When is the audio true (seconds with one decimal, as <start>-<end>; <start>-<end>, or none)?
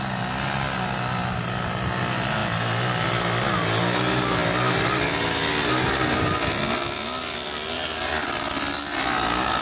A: 0.0-9.6